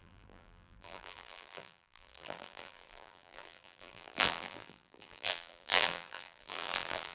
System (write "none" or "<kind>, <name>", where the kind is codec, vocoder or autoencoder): vocoder, BigVGAN v2